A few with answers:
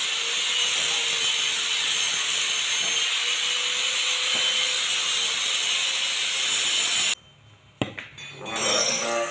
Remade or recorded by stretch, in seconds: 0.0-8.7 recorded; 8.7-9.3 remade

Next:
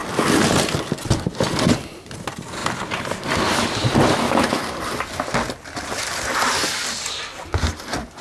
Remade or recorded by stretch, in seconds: 0.0-8.2 recorded

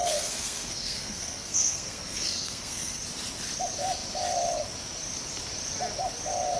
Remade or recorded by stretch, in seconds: 0.0-3.0 remade; 3.0-6.6 recorded